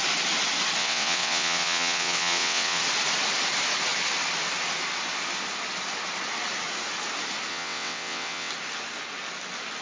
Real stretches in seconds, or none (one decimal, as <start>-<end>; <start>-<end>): 0.0-0.8; 2.8-7.5; 8.5-9.8